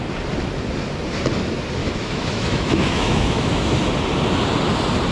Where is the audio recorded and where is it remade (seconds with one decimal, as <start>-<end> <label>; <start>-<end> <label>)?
0.0-1.8 recorded; 1.8-3.8 remade; 3.8-5.1 recorded